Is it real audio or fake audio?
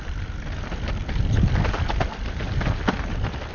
real